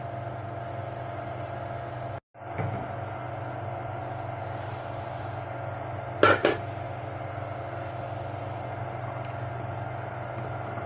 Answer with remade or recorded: recorded